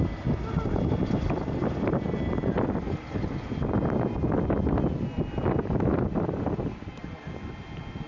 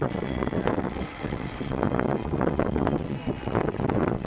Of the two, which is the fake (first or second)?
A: second